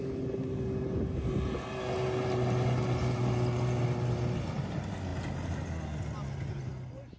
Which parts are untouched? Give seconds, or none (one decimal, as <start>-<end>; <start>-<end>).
0.0-7.2